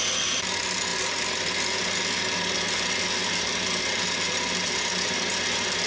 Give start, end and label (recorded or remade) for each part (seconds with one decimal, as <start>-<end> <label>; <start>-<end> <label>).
0.0-5.9 recorded

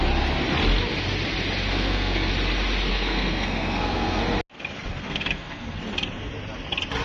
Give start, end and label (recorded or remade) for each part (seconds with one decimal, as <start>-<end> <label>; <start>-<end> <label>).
0.0-1.7 recorded; 1.7-2.3 remade; 2.3-2.9 recorded; 2.9-4.2 remade; 4.2-5.0 recorded; 5.0-5.8 remade; 5.8-7.0 recorded